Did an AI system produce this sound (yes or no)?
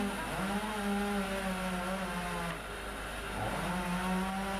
no